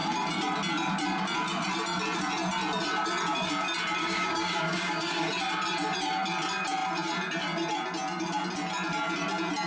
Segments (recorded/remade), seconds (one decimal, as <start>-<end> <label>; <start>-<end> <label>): 0.0-4.0 recorded; 4.0-5.3 remade; 5.3-9.7 recorded